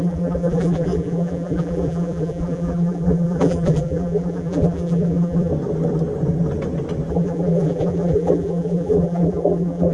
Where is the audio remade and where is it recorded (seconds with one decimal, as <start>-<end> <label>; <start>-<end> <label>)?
0.0-5.5 remade; 5.5-7.1 recorded; 7.1-9.9 remade